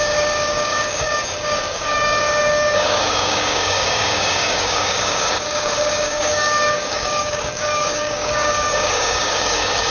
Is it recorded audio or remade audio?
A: remade